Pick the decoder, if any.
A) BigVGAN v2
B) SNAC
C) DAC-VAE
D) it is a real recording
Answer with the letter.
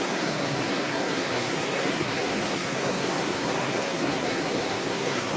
B